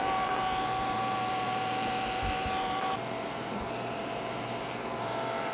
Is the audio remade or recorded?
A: remade